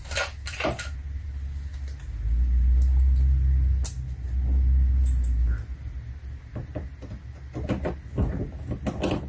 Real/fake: real